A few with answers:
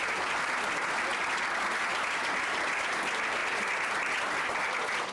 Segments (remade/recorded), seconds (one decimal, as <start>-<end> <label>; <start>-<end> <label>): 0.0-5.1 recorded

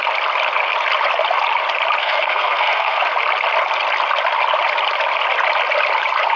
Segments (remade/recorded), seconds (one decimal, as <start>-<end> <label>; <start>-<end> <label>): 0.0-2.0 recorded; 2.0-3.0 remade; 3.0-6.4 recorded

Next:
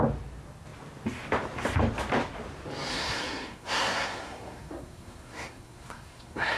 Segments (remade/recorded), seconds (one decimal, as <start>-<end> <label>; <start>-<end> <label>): 0.0-2.9 recorded; 2.9-6.6 remade

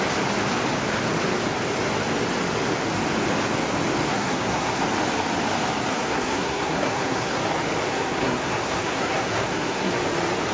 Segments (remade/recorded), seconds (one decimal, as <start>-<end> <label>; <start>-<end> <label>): 0.0-4.1 recorded; 4.1-4.8 remade; 4.8-5.9 recorded; 5.9-7.4 remade; 7.4-7.9 recorded; 7.9-9.9 remade; 9.9-10.5 recorded

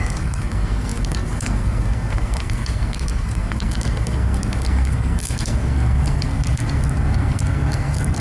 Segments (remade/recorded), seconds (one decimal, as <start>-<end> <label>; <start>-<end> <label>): 0.0-8.2 remade

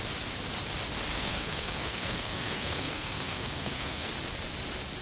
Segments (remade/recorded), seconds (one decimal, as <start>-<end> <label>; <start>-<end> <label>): 0.0-1.1 recorded; 1.1-4.1 remade; 4.1-5.0 recorded

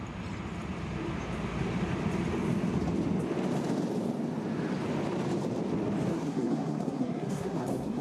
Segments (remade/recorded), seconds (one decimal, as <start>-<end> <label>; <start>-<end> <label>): 0.0-6.1 recorded; 6.1-8.0 remade